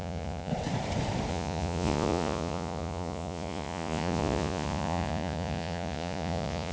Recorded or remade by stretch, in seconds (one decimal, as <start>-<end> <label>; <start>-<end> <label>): 0.0-0.5 remade; 0.5-1.3 recorded; 1.3-6.7 remade